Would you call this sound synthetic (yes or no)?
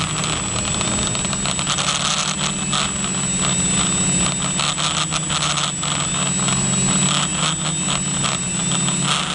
no